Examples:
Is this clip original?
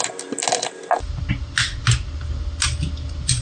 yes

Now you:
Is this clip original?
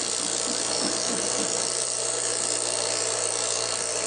yes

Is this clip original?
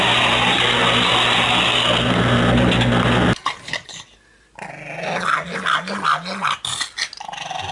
yes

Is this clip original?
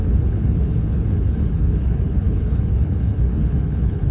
no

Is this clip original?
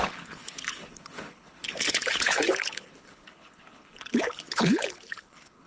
no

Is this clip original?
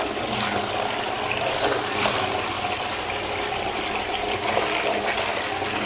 yes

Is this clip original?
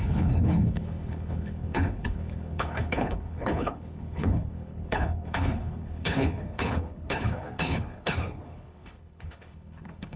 no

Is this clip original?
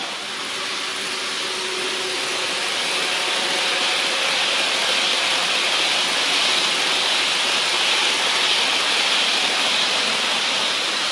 yes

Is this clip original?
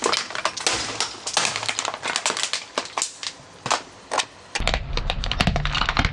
yes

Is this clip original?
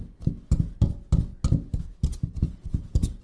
yes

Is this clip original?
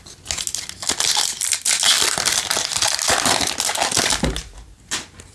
yes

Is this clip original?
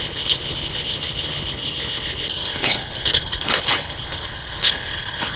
no